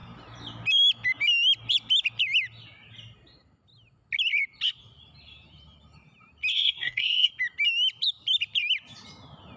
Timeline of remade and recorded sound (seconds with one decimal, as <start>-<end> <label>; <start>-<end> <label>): 0.0-6.5 recorded; 6.5-7.3 remade; 7.3-9.6 recorded